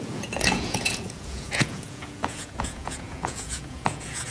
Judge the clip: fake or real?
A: fake